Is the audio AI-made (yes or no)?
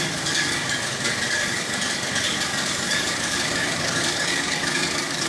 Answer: yes